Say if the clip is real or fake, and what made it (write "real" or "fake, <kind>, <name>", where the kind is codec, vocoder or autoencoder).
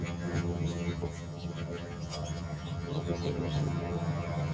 fake, vocoder, HiFi-GAN